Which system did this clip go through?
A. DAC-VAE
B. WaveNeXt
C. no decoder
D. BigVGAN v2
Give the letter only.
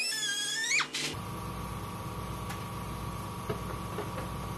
C